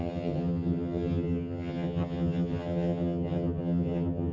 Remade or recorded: remade